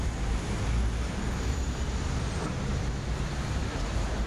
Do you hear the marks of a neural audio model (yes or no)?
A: yes